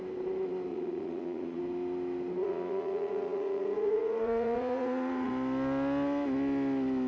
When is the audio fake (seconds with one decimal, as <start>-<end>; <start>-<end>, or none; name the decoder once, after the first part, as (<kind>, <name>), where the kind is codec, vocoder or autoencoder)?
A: 0.7-1.6 (vocoder, Vocos); 2.4-5.3

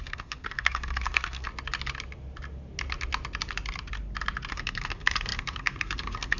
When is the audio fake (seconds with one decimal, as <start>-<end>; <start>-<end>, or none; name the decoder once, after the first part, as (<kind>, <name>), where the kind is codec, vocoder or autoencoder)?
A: 0.0-1.5 (codec, SNAC); 4.5-6.4

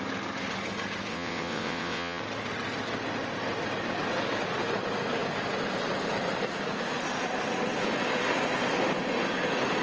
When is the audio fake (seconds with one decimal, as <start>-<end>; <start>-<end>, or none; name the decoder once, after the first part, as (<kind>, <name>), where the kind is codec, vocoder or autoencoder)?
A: 1.1-2.2 (vocoder, WaveNeXt)

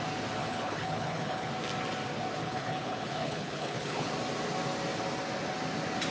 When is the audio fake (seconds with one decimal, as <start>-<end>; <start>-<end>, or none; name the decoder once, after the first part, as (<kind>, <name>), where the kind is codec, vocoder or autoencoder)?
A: 0.4-1.5 (codec, HILCodec); 2.4-4.1

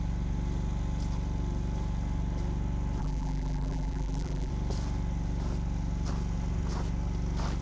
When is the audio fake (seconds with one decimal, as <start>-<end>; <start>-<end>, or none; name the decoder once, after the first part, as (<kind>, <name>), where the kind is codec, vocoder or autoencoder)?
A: 3.0-4.5 (vocoder, BigVGAN v2)

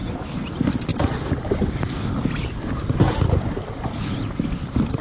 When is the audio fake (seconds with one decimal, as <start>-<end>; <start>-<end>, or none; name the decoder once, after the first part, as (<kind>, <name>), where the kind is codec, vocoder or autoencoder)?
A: 0.9-1.5 (vocoder, BigVGAN v2)

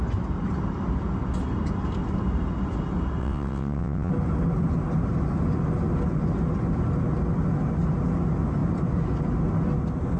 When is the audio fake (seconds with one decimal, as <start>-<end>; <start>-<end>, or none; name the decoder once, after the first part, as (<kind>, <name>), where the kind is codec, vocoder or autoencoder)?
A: 3.2-4.1 (vocoder, WaveNeXt)